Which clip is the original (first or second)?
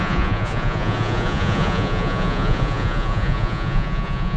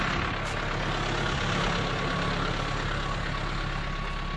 second